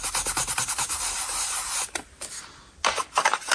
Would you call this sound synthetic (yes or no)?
no